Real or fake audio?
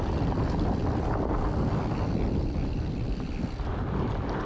real